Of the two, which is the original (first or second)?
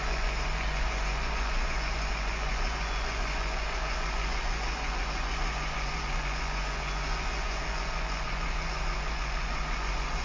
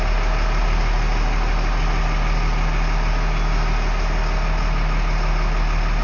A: second